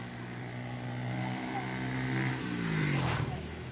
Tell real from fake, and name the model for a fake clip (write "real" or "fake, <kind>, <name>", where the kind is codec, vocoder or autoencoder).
real